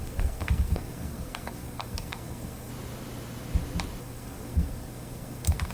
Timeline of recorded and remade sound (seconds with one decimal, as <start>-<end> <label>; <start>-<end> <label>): 0.0-2.7 remade; 2.7-4.0 recorded; 4.0-5.7 remade

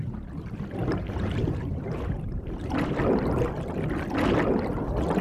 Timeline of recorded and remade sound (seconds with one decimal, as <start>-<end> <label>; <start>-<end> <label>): 0.0-0.8 recorded; 0.8-2.9 remade; 2.9-5.2 recorded

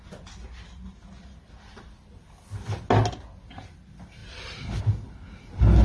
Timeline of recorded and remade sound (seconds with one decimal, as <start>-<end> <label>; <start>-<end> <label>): 0.0-4.2 recorded; 4.2-4.8 remade; 4.8-5.8 recorded